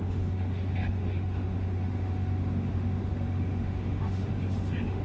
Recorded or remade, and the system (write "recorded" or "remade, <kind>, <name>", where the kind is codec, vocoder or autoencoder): remade, autoencoder, DAC-VAE